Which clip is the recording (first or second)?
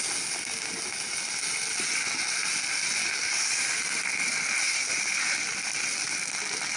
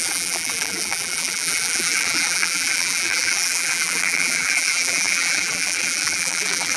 first